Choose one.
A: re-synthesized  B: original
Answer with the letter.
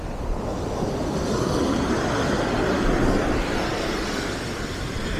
B